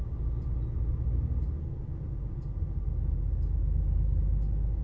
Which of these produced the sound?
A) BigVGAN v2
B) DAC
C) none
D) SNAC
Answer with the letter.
C